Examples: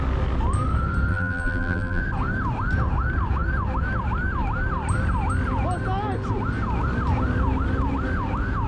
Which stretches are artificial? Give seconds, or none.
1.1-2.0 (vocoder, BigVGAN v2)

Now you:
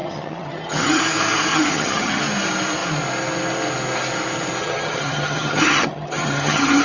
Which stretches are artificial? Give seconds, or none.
0.0-1.0 (vocoder, HiFi-GAN); 1.5-2.2; 4.6-6.8

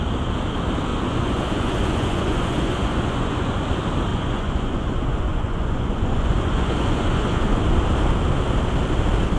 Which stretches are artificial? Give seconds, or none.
0.9-3.6 (vocoder, Vocos); 4.1-7.6

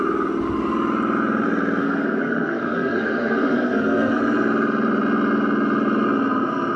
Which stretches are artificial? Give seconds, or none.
1.8-4.2 (codec, SNAC)